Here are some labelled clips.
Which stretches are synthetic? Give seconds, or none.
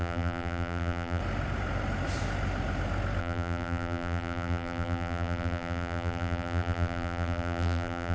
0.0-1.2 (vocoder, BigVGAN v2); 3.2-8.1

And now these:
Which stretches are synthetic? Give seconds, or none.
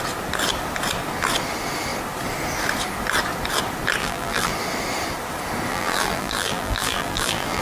4.0-4.5 (vocoder, BigVGAN v2); 5.7-7.6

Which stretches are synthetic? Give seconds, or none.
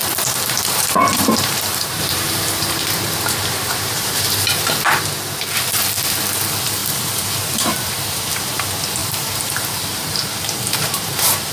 0.0-4.2 (vocoder, BigVGAN v2); 6.8-8.6; 9.0-11.5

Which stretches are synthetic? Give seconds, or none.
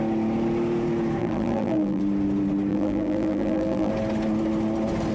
1.2-2.0 (vocoder, BigVGAN v2); 2.7-3.9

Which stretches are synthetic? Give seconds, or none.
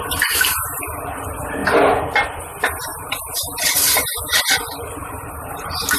2.9-4.4 (vocoder, BigVGAN v2); 5.0-6.0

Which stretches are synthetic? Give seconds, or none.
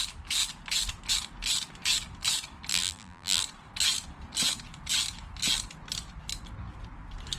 2.7-3.4 (vocoder, BigVGAN v2)